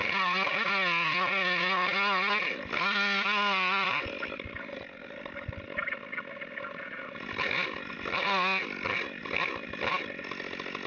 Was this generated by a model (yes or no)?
no